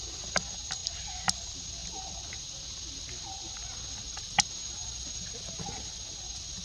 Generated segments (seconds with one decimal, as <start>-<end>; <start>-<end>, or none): none